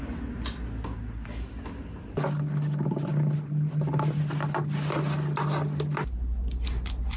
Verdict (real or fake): real